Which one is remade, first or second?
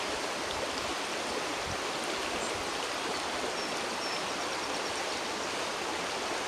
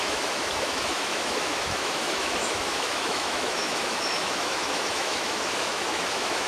second